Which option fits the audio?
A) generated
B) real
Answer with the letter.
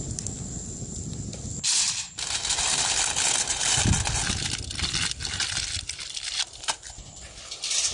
B